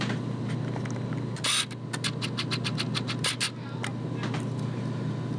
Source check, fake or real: real